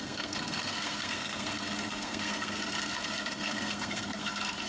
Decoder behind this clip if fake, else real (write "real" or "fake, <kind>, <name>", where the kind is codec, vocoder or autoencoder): fake, codec, SNAC